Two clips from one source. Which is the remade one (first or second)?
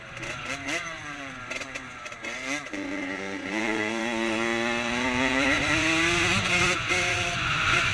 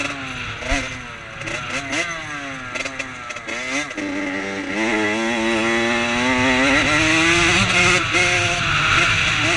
first